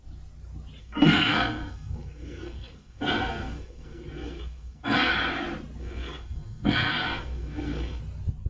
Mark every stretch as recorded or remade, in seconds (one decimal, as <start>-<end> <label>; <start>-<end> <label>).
0.0-0.8 recorded; 0.8-5.1 remade; 5.1-5.8 recorded; 5.8-8.0 remade; 8.0-8.5 recorded